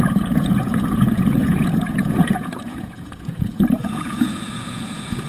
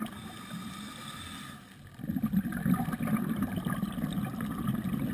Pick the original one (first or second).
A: second